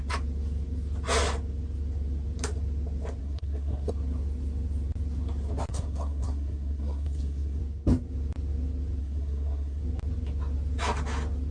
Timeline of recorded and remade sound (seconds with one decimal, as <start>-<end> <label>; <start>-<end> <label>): 0.0-3.2 recorded; 3.2-3.9 remade; 3.9-5.7 recorded; 5.7-7.6 remade; 7.6-9.0 recorded; 9.0-9.8 remade; 9.8-11.5 recorded

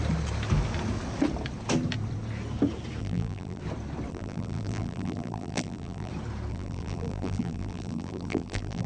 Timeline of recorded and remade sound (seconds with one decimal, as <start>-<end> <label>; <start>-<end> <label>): 0.0-3.0 recorded; 3.0-3.6 remade; 3.6-4.1 recorded; 4.1-6.1 remade; 6.1-6.5 recorded; 6.5-8.9 remade

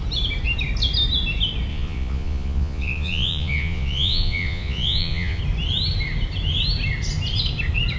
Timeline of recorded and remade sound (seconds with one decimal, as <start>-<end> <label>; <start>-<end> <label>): 0.0-1.7 recorded; 1.7-5.4 remade; 5.4-8.0 recorded

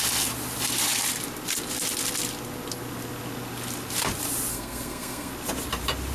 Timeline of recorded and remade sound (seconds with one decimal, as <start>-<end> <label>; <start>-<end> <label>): 0.0-4.5 recorded; 4.5-5.3 remade; 5.3-6.1 recorded

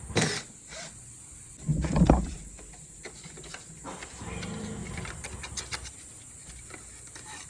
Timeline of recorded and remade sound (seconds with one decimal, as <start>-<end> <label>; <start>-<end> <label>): 0.0-7.5 recorded

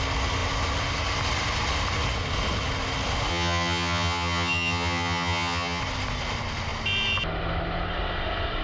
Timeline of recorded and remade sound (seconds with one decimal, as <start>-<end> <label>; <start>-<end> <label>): 0.0-3.3 recorded; 3.3-5.8 remade; 5.8-8.6 recorded

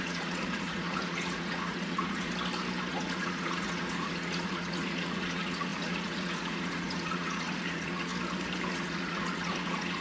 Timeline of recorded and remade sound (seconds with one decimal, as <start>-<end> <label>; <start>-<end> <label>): 0.0-2.3 remade; 2.3-2.9 recorded; 2.9-8.1 remade; 8.1-8.7 recorded; 8.7-10.0 remade

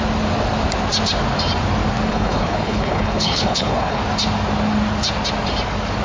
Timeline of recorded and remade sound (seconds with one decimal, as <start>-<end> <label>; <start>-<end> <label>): 0.0-2.1 recorded; 2.1-4.0 remade; 4.0-6.0 recorded